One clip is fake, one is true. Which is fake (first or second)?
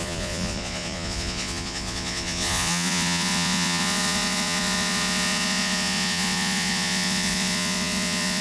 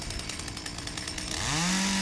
first